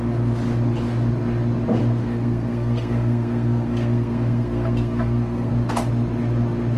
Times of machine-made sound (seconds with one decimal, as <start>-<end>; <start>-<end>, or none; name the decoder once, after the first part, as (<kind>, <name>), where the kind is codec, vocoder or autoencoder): 1.8-5.5 (codec, SNAC)